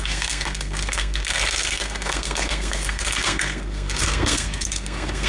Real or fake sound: fake